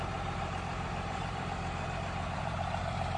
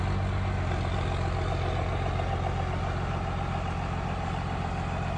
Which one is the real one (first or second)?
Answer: second